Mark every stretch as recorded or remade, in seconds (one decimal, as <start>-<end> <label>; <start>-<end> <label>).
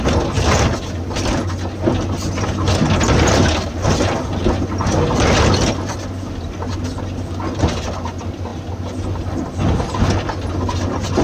0.0-11.2 recorded